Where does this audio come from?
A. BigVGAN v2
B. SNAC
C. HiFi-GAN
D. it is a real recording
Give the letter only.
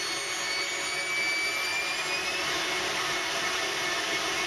D